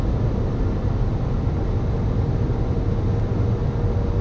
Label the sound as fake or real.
real